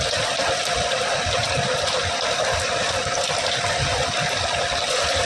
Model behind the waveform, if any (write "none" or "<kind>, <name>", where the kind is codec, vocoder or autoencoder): vocoder, BigVGAN v2